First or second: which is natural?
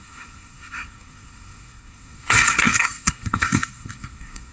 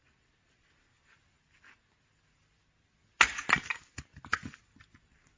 second